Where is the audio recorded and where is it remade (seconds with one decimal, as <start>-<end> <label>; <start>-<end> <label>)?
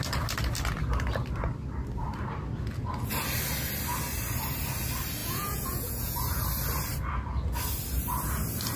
0.0-5.2 recorded; 5.2-6.4 remade; 6.4-8.8 recorded